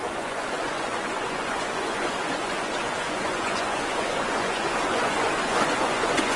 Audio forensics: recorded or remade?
remade